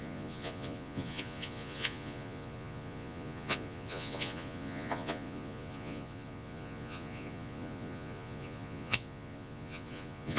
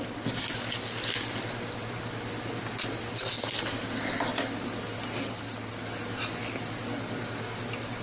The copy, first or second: first